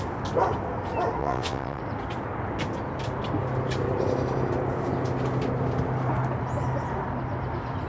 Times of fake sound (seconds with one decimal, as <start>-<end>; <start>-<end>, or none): 1.2-1.8